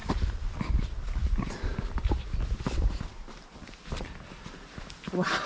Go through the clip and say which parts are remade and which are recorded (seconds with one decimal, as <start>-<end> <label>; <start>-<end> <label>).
0.0-0.7 recorded; 0.7-5.5 remade

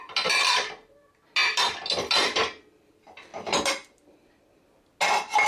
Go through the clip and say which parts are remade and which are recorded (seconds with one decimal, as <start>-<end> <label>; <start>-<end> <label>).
0.0-5.5 recorded

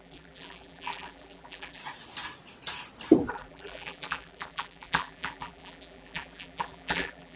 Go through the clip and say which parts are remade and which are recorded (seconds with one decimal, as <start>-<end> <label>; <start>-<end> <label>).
0.0-1.8 remade; 1.8-3.3 recorded; 3.3-7.4 remade